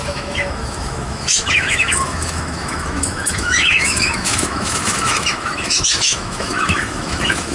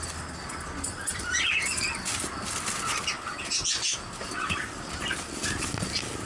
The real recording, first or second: second